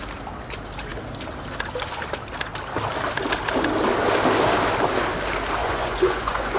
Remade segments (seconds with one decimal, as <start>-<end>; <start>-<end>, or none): 5.6-6.6